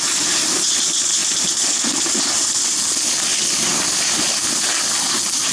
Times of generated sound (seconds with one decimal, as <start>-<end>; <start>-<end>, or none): none